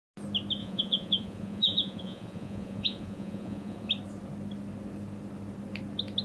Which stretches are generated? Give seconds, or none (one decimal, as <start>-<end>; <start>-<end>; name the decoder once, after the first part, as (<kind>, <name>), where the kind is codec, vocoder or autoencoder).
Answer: 0.6-3.9 (vocoder, Vocos)